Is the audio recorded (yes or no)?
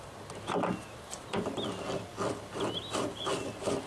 yes